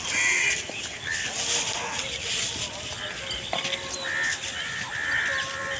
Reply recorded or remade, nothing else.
recorded